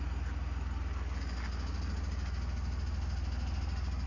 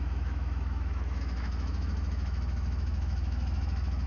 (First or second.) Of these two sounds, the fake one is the second